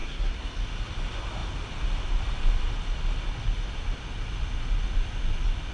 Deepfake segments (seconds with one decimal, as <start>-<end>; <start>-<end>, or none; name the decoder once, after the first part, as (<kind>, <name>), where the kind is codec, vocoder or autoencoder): 0.0-0.6 (codec, SNAC)

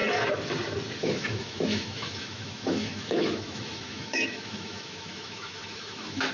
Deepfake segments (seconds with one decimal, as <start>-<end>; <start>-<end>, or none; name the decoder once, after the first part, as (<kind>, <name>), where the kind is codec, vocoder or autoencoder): 1.0-6.3 (autoencoder, DAC-VAE)

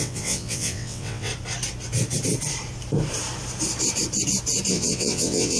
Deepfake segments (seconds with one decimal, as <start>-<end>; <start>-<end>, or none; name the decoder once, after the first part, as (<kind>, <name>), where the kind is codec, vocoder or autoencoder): 0.0-1.3 (vocoder, WaveNeXt); 4.7-5.6

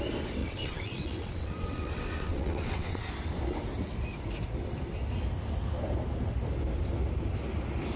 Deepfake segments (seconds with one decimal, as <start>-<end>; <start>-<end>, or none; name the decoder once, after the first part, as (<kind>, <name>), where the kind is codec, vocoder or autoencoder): 0.4-3.0 (vocoder, WaveNeXt)

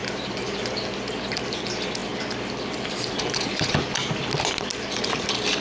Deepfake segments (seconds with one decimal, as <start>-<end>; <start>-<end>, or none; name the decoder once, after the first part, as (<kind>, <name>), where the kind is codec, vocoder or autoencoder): 0.0-0.6 (vocoder, BigVGAN v2)

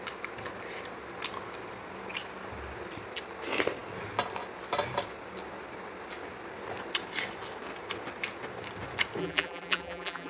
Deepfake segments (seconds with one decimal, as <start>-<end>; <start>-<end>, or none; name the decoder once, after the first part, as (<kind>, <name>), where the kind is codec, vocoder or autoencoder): 9.2-10.3 (vocoder, BigVGAN v2)

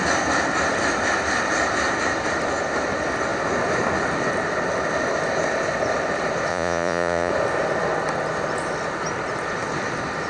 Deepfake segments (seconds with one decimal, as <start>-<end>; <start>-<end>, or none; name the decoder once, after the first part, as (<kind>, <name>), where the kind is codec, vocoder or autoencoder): 6.5-7.3 (vocoder, Vocos)

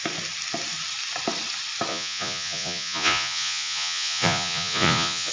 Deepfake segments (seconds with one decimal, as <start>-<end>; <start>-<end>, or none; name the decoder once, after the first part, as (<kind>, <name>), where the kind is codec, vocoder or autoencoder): 1.9-5.3 (vocoder, Vocos)